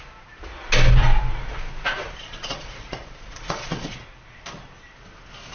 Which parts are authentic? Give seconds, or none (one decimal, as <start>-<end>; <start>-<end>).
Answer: 0.0-2.2; 4.0-5.5